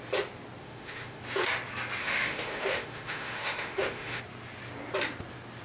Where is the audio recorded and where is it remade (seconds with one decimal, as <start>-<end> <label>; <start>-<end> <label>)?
0.0-0.6 recorded; 0.6-1.2 remade; 1.2-2.0 recorded; 2.0-4.2 remade; 4.2-5.6 recorded